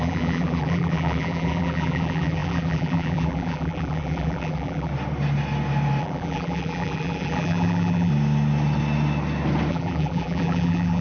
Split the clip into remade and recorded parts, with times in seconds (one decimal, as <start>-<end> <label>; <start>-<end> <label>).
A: 0.0-4.9 remade; 4.9-6.0 recorded; 6.0-8.1 remade; 8.1-9.7 recorded; 9.7-11.0 remade